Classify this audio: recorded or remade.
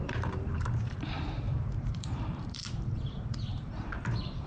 remade